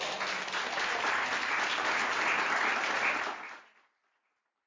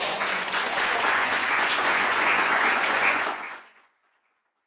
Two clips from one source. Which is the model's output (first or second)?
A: second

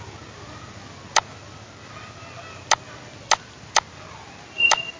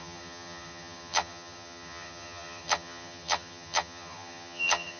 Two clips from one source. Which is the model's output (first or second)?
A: second